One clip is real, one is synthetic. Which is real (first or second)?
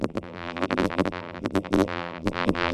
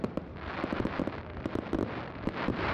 second